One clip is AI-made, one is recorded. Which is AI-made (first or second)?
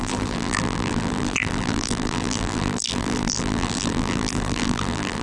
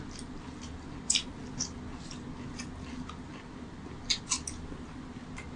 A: first